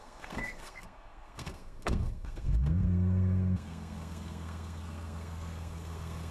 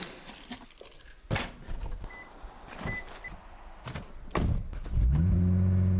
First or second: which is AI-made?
first